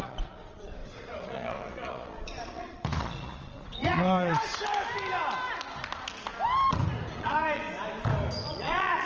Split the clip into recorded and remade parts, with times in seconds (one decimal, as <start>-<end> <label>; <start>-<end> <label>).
0.0-4.4 remade; 4.4-7.1 recorded; 7.1-7.6 remade; 7.6-8.5 recorded; 8.5-9.1 remade